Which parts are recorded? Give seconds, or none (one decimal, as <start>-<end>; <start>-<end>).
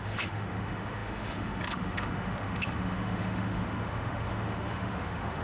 none